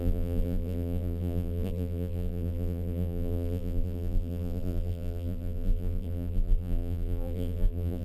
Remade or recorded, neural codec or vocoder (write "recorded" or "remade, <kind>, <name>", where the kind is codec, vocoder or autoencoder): remade, vocoder, BigVGAN v2